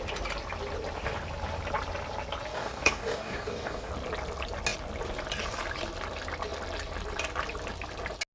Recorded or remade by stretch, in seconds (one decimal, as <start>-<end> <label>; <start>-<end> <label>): 0.0-2.5 recorded; 2.5-3.9 remade; 3.9-8.3 recorded